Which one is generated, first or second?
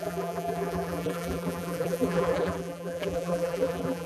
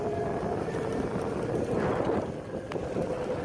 first